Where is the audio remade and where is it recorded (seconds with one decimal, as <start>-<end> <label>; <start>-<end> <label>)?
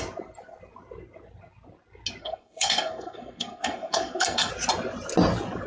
0.0-2.2 recorded; 2.2-4.5 remade; 4.5-5.7 recorded